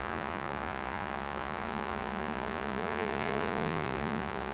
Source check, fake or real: fake